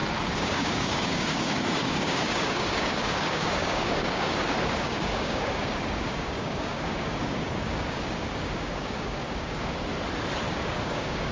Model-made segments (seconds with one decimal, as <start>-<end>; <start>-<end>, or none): 0.0-9.9; 10.5-11.3